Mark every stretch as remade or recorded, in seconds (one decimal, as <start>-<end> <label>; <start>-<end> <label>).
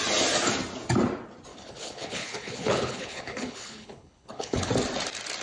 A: 0.0-1.5 recorded; 1.5-4.7 remade; 4.7-5.4 recorded